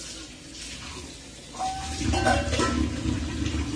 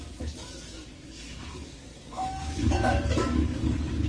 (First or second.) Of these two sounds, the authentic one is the first